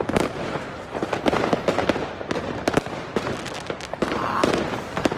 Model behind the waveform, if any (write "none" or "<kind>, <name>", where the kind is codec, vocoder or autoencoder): none